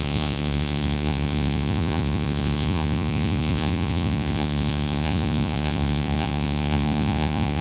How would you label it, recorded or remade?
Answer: remade